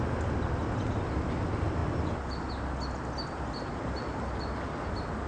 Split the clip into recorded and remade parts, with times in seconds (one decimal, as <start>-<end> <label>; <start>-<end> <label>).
0.0-5.3 recorded